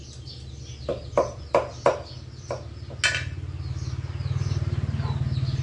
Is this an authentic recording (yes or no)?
yes